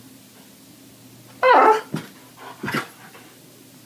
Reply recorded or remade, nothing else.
recorded